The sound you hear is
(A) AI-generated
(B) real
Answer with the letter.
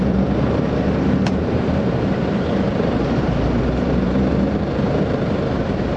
A